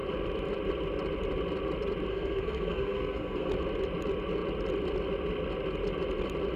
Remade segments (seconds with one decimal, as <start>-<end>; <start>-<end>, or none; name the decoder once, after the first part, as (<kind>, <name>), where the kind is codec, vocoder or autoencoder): 2.1-3.5 (codec, SNAC)